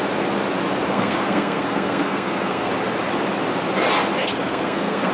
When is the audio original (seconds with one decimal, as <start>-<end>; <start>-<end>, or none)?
0.0-0.9; 2.7-4.2